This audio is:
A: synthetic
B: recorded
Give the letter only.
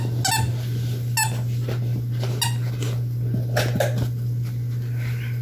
B